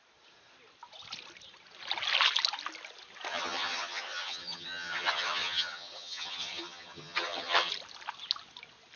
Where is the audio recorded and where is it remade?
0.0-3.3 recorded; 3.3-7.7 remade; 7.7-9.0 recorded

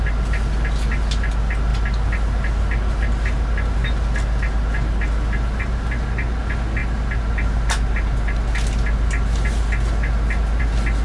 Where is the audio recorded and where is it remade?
0.0-11.0 recorded

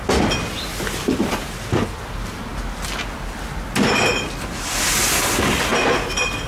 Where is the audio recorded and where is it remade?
0.0-6.5 recorded

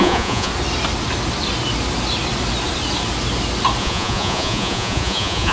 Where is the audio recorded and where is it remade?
0.0-0.5 remade; 0.5-3.8 recorded; 3.8-5.5 remade

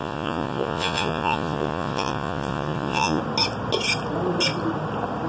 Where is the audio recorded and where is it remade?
0.0-3.2 remade; 3.2-5.3 recorded

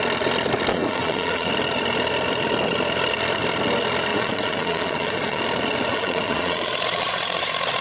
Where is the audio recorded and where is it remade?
0.0-0.7 recorded; 0.7-1.5 remade; 1.5-4.1 recorded; 4.1-5.4 remade; 5.4-5.9 recorded; 5.9-7.8 remade

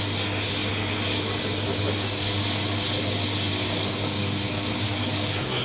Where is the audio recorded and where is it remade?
0.0-3.5 recorded; 3.5-5.6 remade

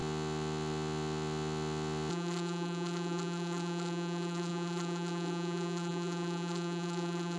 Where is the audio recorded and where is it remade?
0.0-2.1 recorded; 2.1-7.4 remade